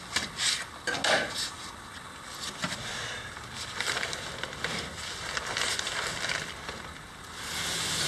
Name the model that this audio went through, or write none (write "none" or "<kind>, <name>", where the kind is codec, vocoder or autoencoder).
none